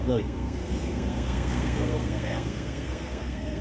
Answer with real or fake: fake